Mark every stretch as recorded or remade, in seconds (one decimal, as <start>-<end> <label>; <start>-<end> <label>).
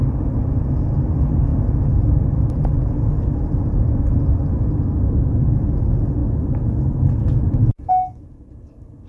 0.0-9.1 recorded